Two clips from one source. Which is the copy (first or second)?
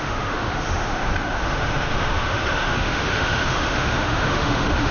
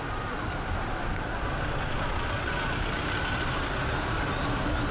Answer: first